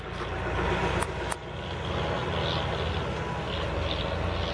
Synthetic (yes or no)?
no